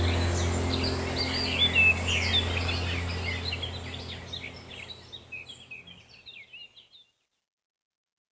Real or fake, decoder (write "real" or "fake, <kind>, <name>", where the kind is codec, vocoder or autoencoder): real